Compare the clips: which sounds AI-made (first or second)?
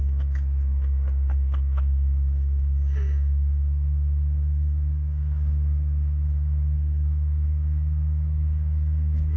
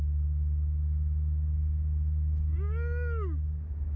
first